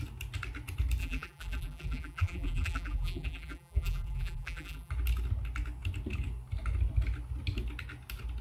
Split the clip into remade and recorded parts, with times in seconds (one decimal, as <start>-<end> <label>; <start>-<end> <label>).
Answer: 0.0-1.0 recorded; 1.0-4.9 remade; 4.9-8.4 recorded